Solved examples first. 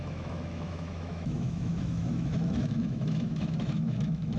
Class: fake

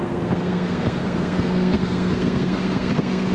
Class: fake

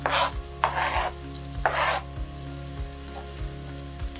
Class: real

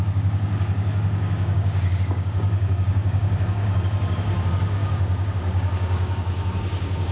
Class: fake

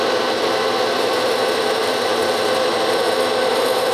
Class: real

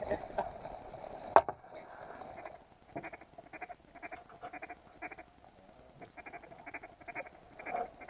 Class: real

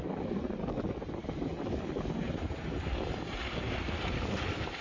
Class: real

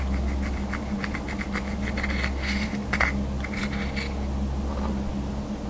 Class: real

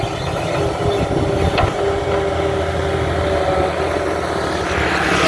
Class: real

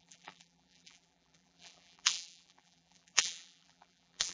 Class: fake